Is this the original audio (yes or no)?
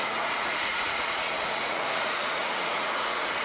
no